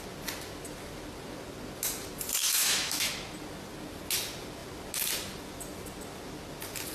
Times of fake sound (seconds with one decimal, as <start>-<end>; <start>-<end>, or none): 2.4-3.1